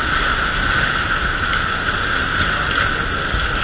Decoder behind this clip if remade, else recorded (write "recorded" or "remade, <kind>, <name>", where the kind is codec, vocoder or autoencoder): recorded